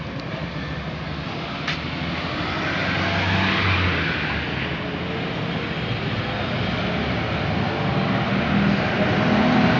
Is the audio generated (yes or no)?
no